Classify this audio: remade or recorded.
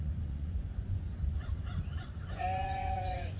remade